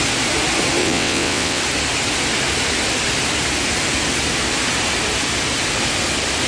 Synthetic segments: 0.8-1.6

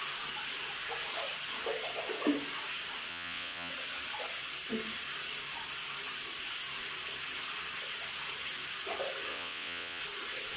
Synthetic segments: 3.1-3.7; 9.3-10.0